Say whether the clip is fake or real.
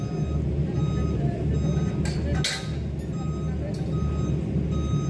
real